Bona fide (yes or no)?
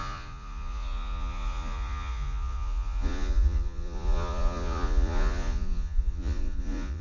no